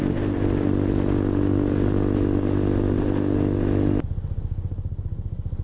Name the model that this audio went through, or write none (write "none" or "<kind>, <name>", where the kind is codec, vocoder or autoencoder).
none